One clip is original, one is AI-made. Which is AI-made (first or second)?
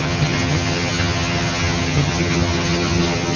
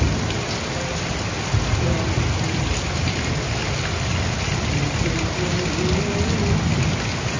first